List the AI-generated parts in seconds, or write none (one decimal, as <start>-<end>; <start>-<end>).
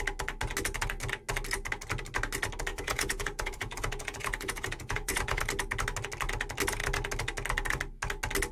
2.7-5.4